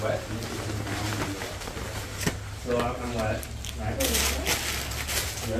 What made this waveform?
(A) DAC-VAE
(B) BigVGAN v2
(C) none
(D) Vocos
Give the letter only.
C